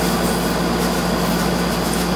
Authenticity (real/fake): real